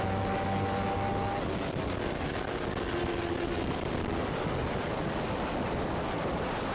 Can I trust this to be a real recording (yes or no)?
yes